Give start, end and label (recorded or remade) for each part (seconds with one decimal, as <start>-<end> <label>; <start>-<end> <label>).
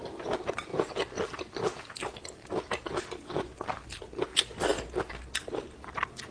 0.0-6.3 recorded